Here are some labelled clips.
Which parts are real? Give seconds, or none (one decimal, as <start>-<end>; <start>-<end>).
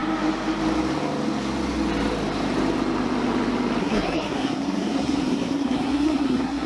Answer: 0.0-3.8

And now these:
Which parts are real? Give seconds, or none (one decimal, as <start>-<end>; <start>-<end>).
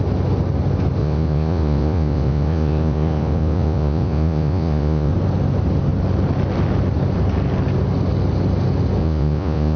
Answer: 0.0-1.0; 5.1-9.0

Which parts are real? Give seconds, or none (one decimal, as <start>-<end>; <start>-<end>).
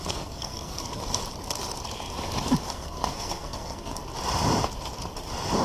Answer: 1.0-2.7; 4.0-5.6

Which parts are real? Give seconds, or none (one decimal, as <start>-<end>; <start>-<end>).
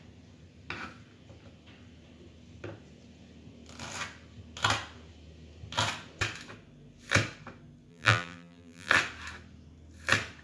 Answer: 0.0-7.9; 8.9-10.4